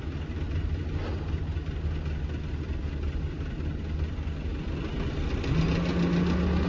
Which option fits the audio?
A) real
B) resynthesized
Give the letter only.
A